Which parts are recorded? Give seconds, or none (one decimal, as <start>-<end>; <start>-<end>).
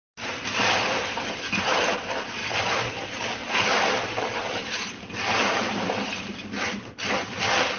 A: 0.0-2.4; 2.9-3.4; 6.5-7.8